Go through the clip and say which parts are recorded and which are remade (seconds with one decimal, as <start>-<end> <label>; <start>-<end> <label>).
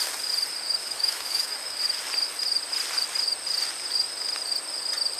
0.0-0.8 recorded; 0.8-1.8 remade; 1.8-5.2 recorded